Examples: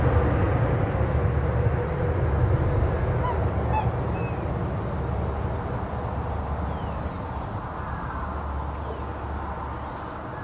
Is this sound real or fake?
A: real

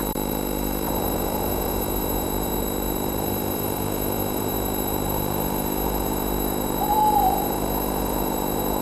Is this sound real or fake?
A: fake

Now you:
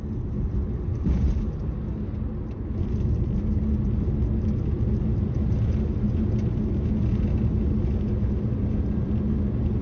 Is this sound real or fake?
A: real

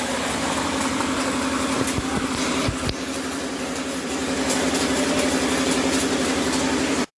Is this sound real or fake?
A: fake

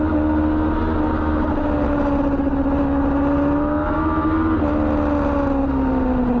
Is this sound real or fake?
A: real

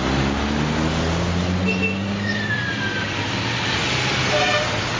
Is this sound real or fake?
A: real